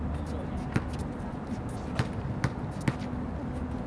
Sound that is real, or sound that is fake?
real